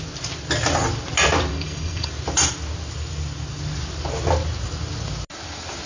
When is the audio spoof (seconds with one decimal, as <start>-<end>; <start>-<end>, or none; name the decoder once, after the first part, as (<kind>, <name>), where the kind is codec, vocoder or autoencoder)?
1.5-2.1 (codec, SNAC)